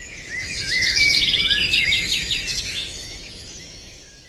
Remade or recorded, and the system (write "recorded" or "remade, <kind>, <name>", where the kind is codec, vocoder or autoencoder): remade, autoencoder, DAC-VAE